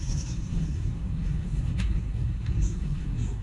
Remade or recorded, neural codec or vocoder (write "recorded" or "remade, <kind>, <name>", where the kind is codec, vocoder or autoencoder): remade, codec, SNAC